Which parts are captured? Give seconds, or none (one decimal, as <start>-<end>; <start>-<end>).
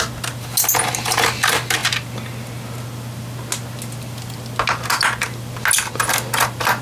0.0-6.8